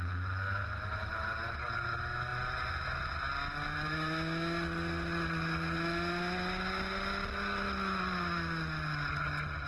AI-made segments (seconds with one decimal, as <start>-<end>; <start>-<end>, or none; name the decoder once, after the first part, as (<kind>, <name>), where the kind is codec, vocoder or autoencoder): none